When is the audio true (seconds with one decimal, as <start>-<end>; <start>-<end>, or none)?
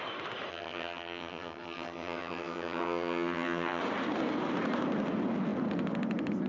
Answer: 0.0-0.5; 3.8-6.5